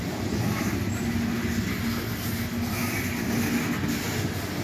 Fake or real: real